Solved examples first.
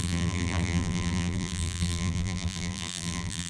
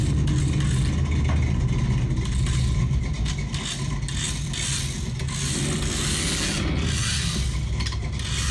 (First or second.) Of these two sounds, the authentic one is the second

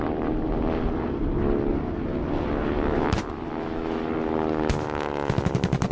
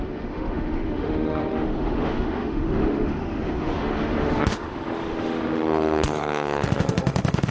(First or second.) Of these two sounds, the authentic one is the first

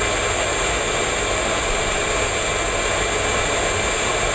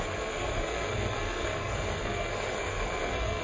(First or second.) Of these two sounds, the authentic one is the first